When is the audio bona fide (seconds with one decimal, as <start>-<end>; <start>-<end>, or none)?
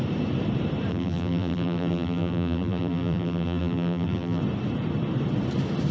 0.0-0.9; 4.4-5.9